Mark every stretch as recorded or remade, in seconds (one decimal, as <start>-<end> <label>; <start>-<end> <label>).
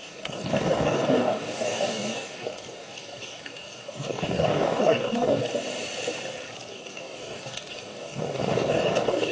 0.0-5.4 remade; 5.4-6.7 recorded; 6.7-9.3 remade